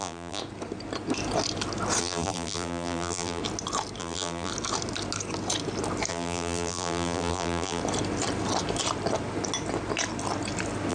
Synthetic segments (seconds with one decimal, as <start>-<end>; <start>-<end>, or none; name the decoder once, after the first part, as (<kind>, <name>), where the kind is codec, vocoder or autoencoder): 0.0-0.4 (vocoder, BigVGAN v2); 2.0-3.4; 4.0-4.5; 6.1-7.8